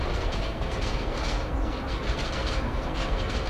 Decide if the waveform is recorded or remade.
remade